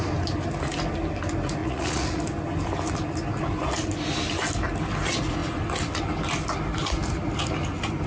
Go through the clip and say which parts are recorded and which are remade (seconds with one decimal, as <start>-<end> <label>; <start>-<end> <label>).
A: 0.0-1.6 recorded; 1.6-2.2 remade; 2.2-8.1 recorded